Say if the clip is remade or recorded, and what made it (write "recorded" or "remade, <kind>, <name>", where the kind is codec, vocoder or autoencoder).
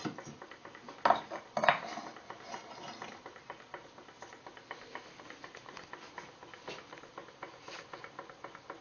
recorded